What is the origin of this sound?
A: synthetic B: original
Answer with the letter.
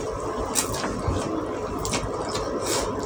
B